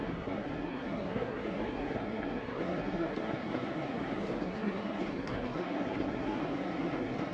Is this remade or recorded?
remade